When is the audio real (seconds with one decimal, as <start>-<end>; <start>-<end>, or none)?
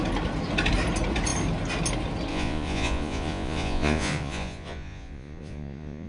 0.0-2.3